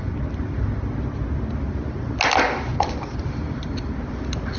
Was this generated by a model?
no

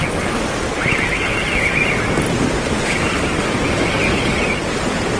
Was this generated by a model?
no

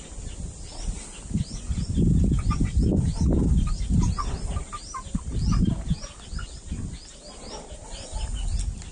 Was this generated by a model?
no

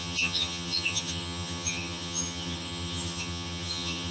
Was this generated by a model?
yes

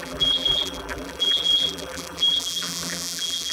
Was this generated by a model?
yes